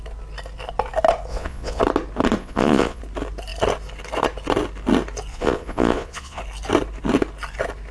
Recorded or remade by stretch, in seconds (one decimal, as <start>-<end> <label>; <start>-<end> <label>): 0.0-1.3 recorded; 1.3-1.8 remade; 1.8-2.4 recorded; 2.4-3.0 remade; 3.0-5.3 recorded; 5.3-6.4 remade; 6.4-7.9 recorded